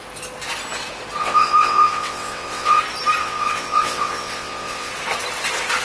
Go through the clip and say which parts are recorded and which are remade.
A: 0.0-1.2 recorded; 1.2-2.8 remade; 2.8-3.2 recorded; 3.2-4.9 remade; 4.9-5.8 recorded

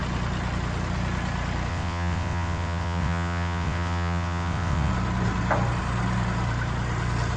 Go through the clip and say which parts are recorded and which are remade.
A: 0.0-1.7 recorded; 1.7-4.9 remade; 4.9-7.4 recorded

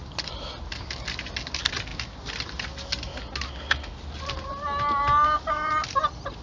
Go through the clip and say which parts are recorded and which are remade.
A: 0.0-6.4 recorded

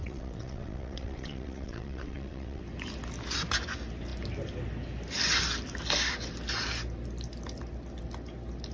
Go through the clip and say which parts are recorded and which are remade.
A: 0.0-2.6 remade; 2.6-8.7 recorded